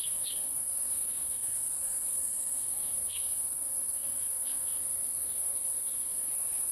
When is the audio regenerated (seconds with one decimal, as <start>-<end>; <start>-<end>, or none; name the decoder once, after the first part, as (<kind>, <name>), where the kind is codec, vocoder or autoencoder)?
0.0-6.7 (codec, SNAC)